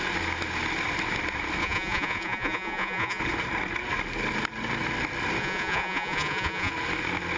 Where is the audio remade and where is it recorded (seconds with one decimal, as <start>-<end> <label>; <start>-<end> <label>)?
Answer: 0.0-1.6 recorded; 1.6-3.2 remade; 3.2-5.4 recorded; 5.4-6.7 remade; 6.7-7.4 recorded